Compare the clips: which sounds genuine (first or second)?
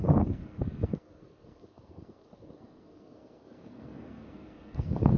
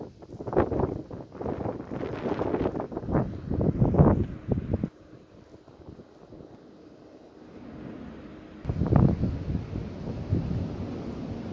second